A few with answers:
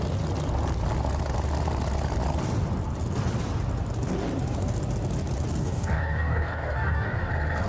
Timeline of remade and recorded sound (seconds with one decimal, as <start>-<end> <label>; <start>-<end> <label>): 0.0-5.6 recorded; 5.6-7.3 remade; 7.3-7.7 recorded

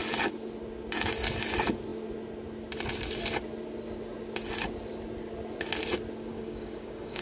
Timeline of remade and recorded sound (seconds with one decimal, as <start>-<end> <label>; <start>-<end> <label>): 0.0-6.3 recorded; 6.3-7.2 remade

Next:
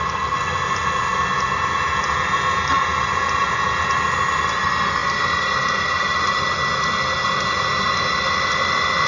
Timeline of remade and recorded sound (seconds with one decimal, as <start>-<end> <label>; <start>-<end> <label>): 0.0-9.1 recorded

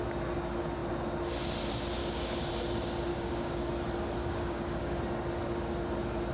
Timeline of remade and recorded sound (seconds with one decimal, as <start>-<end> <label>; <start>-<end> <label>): 0.0-2.0 recorded; 2.0-2.5 remade; 2.5-3.1 recorded; 3.1-3.7 remade; 3.7-4.2 recorded; 4.2-5.0 remade; 5.0-6.3 recorded